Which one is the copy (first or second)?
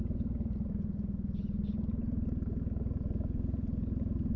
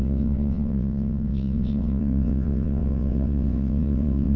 second